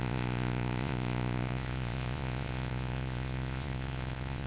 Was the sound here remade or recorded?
remade